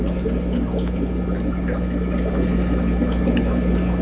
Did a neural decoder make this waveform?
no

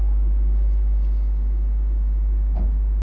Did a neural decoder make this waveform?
no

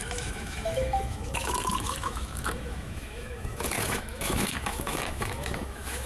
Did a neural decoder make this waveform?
yes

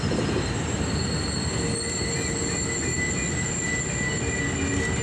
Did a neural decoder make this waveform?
no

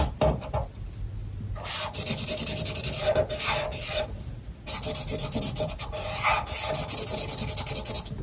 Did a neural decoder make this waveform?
no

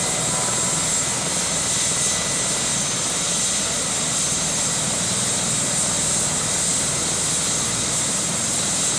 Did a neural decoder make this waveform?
no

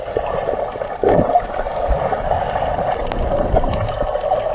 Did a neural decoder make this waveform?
no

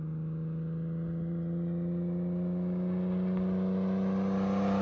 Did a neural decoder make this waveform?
no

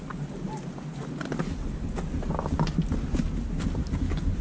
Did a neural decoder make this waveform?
no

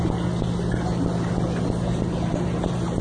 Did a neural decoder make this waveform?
no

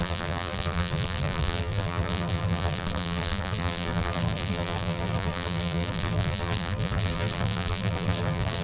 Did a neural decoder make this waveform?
yes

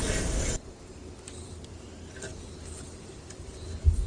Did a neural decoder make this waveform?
no